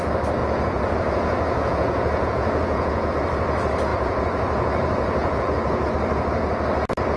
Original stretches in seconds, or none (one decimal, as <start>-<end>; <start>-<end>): 0.0-0.4; 3.1-3.9; 5.9-7.2